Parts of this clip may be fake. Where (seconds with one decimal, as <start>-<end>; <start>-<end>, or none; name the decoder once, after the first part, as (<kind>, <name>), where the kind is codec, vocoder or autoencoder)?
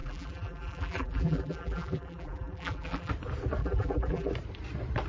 0.0-3.1 (vocoder, BigVGAN v2); 3.6-4.3